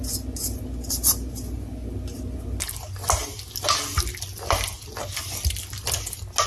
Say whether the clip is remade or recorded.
recorded